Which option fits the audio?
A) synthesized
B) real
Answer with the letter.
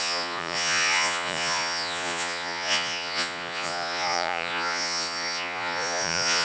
A